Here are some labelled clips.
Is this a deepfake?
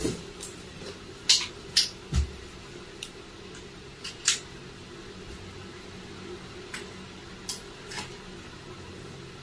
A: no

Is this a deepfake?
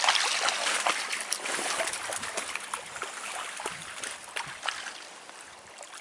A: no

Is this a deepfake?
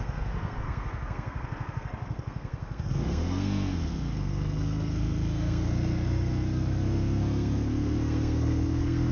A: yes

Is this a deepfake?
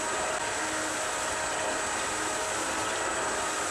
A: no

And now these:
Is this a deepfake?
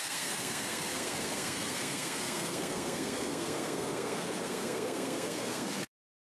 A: yes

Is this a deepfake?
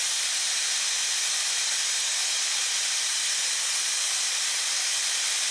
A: no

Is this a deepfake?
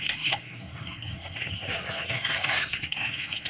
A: yes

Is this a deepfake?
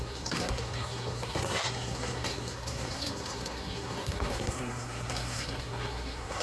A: yes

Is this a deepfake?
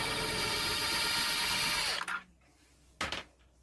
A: no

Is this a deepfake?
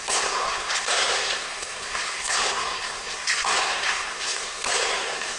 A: yes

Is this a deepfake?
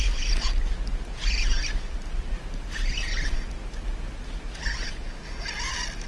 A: no